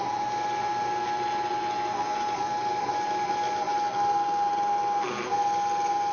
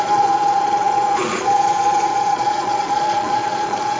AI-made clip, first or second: second